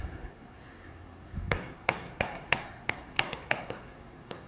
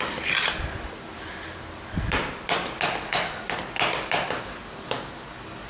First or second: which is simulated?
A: first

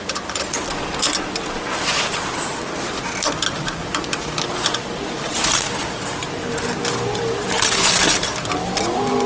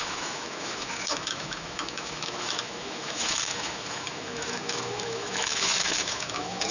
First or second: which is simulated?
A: second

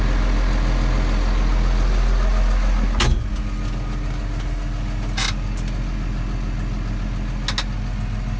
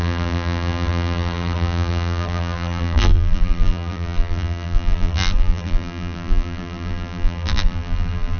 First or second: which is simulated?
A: second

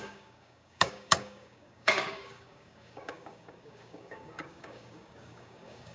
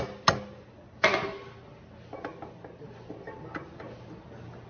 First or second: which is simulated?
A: first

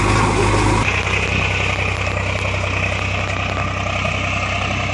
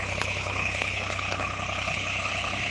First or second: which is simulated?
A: second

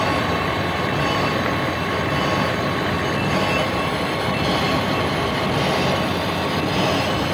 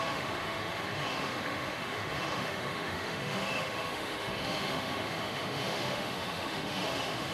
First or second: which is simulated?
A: second